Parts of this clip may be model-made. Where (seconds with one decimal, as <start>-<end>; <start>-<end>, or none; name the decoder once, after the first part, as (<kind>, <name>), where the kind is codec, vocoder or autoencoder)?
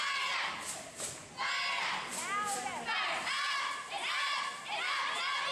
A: none